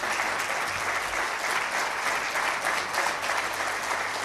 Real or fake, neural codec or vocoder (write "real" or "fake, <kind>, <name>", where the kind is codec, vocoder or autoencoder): real